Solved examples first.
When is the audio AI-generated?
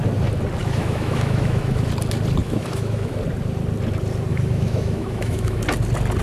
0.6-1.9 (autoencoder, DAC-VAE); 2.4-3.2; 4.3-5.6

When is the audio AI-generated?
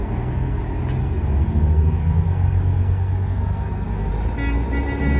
0.0-0.6 (codec, SNAC); 1.0-4.1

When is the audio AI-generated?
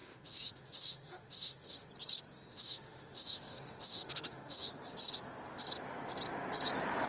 0.0-1.9 (autoencoder, DAC-VAE); 2.5-4.7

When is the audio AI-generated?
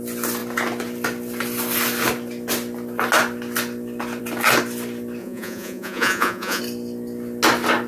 5.2-6.6 (vocoder, Vocos)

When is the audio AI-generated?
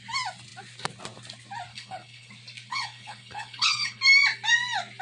1.7-2.3 (codec, HILCodec); 2.7-4.0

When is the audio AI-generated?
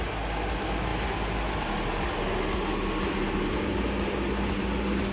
none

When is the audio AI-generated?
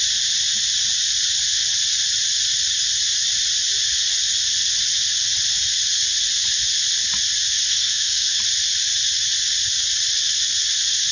7.7-8.4 (codec, SNAC)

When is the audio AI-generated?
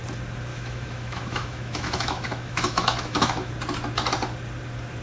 0.5-3.5 (autoencoder, DAC-VAE)